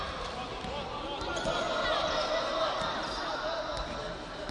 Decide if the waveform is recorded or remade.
recorded